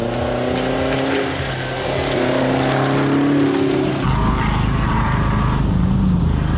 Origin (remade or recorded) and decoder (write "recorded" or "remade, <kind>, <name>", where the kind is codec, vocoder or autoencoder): recorded